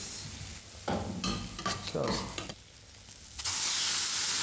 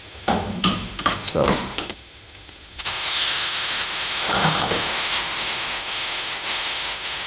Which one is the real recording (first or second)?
first